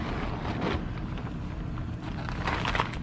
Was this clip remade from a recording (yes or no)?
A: no